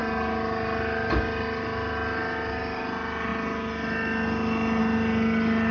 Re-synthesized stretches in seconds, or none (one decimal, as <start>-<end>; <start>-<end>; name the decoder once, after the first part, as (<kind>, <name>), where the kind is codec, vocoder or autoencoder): none